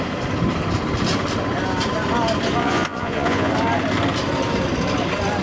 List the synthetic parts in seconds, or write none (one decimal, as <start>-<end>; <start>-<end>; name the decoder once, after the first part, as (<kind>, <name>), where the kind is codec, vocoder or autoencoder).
2.6-3.5 (vocoder, Vocos)